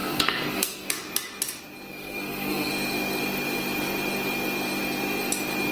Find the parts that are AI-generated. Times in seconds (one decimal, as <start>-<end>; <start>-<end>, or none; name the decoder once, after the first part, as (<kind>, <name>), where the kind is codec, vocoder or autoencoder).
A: 0.0-0.9 (codec, SNAC); 1.9-2.7